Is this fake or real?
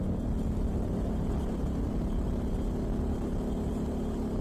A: real